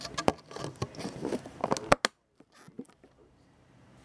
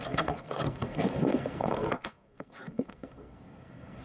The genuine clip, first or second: first